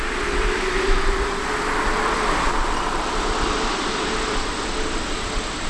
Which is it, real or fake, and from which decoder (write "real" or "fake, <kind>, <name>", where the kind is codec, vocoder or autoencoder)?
fake, vocoder, BigVGAN v2